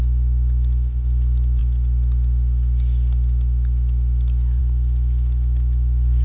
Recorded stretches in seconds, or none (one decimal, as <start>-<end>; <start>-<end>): 0.0-6.2